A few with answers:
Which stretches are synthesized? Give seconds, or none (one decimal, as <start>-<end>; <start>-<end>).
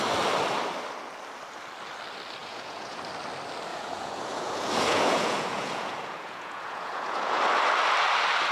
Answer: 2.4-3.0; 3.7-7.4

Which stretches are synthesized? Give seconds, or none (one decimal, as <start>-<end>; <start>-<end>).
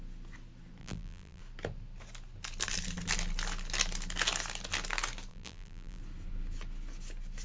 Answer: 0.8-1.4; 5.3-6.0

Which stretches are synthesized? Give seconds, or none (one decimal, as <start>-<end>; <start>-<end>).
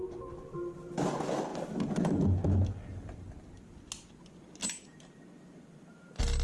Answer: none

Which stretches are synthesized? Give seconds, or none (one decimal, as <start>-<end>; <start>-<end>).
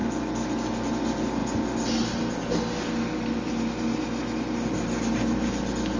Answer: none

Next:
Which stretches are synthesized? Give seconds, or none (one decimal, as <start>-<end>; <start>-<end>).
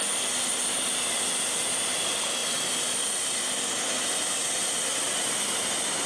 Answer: none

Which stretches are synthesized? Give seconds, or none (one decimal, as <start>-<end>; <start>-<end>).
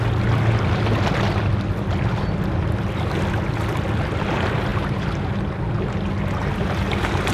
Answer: 4.7-5.3; 6.4-7.3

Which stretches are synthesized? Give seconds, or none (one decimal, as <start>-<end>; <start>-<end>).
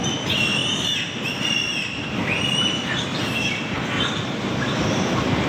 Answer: none